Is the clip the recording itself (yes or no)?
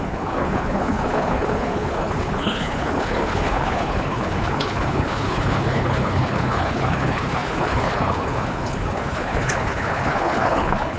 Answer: no